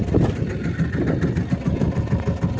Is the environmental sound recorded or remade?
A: recorded